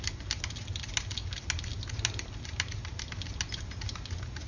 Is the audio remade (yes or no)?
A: no